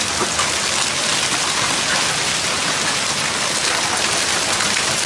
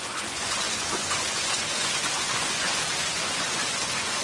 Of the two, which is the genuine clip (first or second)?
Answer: first